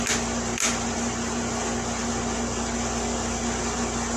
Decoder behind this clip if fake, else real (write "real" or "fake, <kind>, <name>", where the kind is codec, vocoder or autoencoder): real